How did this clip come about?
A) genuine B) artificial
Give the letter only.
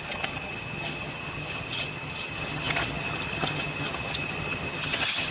B